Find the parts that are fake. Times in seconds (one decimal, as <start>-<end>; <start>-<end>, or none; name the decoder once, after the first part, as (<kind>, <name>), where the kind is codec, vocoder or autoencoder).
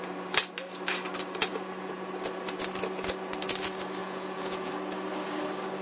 1.5-2.1 (vocoder, Vocos); 4.0-4.7